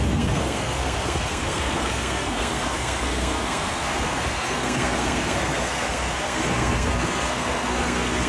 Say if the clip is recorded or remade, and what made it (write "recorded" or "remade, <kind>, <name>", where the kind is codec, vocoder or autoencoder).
remade, codec, SNAC